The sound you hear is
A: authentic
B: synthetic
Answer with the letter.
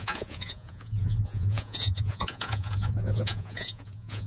B